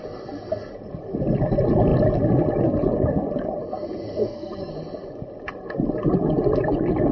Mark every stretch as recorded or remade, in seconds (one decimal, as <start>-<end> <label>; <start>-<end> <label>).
0.0-4.2 recorded; 4.2-4.7 remade; 4.7-7.1 recorded